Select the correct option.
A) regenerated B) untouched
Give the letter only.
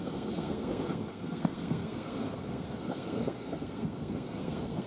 A